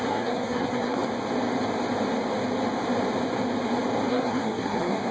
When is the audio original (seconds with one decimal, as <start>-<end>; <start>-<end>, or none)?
1.0-4.1